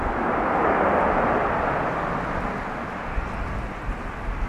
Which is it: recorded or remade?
recorded